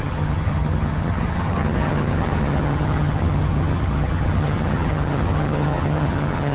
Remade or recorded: remade